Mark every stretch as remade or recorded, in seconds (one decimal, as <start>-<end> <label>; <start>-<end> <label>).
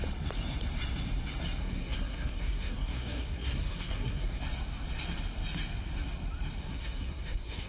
0.0-1.6 recorded; 1.6-4.4 remade; 4.4-6.6 recorded; 6.6-7.7 remade